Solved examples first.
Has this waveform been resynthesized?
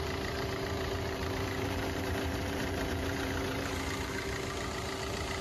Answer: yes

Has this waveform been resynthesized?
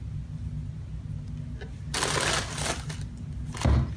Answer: no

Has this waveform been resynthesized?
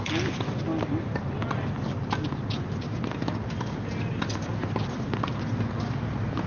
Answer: no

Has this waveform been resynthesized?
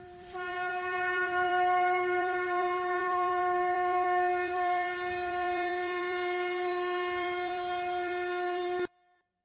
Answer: yes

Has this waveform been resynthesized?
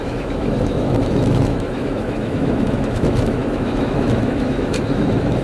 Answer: yes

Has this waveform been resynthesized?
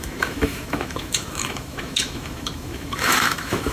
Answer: yes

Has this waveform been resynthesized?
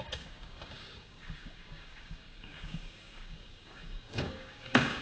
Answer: yes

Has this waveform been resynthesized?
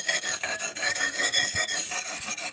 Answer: yes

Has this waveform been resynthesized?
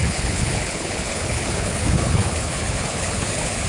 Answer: yes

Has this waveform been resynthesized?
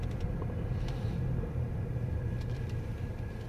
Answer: no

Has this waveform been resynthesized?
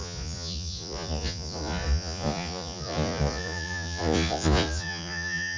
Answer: yes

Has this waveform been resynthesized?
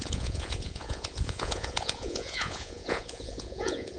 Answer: yes